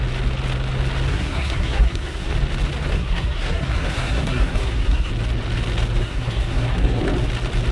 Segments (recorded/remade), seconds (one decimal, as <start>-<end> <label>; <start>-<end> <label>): 0.0-1.1 recorded; 1.1-2.3 remade; 2.3-2.9 recorded; 2.9-5.1 remade; 5.1-6.0 recorded; 6.0-7.0 remade; 7.0-7.7 recorded